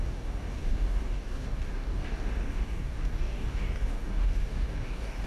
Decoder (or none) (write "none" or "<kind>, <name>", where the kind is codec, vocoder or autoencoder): codec, DAC